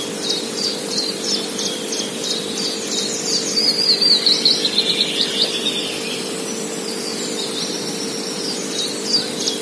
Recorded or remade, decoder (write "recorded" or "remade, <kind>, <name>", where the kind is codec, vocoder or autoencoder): recorded